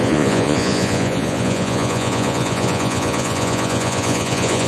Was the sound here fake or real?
fake